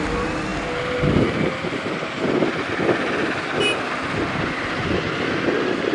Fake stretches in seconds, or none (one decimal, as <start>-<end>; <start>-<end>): none